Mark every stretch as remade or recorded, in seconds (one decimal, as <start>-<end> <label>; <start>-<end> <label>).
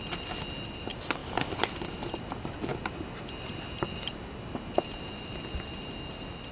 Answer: 0.0-6.5 recorded